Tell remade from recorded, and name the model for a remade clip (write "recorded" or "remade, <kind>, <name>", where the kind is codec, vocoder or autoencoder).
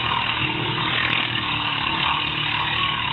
remade, codec, DAC